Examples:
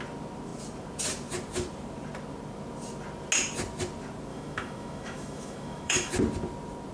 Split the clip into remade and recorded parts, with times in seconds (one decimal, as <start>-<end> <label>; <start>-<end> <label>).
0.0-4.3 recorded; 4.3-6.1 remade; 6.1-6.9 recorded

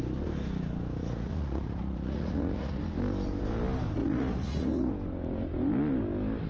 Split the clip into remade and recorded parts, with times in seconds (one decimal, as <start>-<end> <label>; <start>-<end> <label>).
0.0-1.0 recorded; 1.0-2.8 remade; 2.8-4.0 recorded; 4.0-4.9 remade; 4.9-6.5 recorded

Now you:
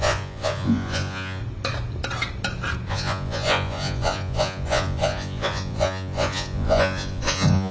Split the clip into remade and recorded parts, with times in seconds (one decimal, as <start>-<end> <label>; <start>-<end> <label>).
0.0-1.4 remade; 1.4-2.9 recorded; 2.9-7.7 remade